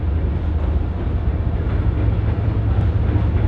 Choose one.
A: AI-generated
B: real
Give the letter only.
B